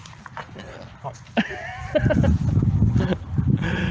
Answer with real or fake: real